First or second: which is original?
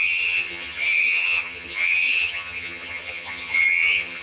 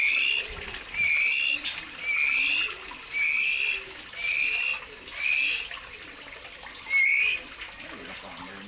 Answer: second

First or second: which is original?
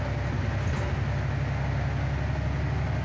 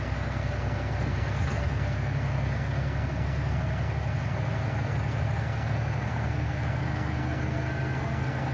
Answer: first